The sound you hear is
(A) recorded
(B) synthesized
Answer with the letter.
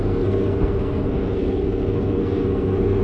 B